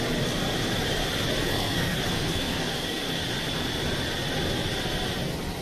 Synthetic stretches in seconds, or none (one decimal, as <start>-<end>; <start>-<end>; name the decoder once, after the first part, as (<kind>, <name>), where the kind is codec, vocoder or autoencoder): 1.5-3.1 (codec, SNAC)